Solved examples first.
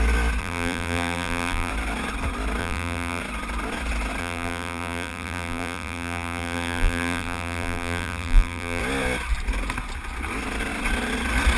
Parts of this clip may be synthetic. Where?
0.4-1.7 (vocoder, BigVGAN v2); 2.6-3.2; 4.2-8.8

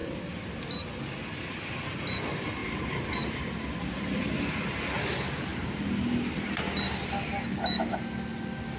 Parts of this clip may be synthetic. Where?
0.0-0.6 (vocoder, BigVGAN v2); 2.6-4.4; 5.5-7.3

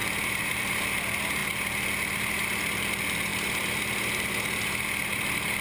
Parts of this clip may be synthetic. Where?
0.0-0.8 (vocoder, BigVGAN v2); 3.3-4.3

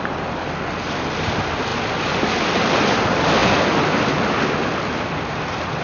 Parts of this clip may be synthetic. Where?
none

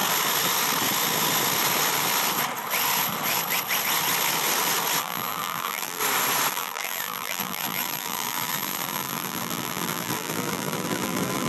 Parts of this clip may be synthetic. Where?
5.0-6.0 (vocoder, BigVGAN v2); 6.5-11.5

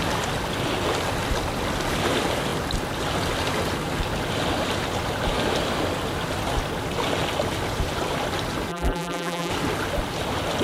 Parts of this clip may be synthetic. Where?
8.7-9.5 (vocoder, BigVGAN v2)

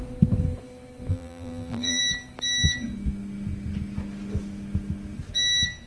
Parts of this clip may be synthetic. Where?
1.1-2.0 (vocoder, BigVGAN v2)